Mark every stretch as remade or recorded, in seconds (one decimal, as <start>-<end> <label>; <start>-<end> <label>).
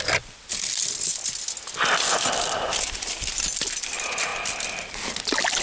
0.0-5.6 recorded